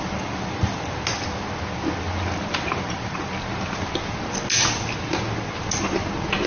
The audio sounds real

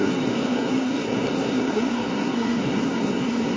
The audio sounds fake